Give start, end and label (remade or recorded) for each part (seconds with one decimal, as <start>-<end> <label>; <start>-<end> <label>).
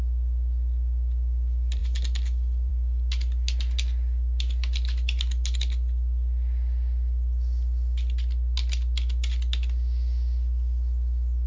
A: 0.0-11.5 recorded